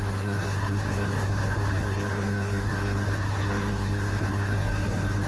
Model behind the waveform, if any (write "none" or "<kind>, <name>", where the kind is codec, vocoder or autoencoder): codec, SNAC